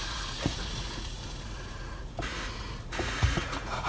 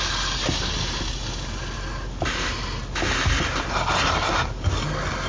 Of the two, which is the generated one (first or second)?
first